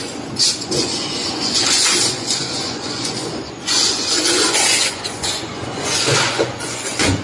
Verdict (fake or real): fake